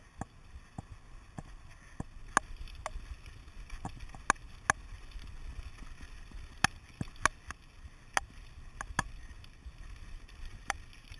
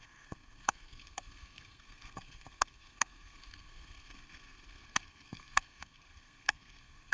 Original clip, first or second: first